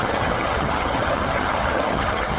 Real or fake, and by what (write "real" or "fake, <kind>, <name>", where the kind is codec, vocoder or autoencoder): fake, vocoder, HiFi-GAN